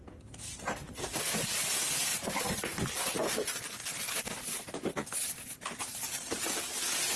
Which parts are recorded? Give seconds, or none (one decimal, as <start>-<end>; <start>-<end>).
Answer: 0.0-2.1; 2.6-3.2; 4.3-4.8; 6.6-7.2